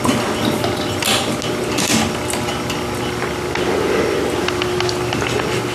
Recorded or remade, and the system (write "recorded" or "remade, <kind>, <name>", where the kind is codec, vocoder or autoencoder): recorded